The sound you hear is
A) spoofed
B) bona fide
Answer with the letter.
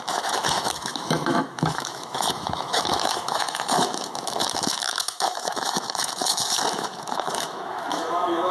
A